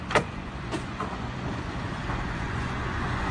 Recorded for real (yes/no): no